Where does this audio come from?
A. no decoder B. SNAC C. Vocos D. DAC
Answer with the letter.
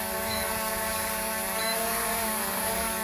D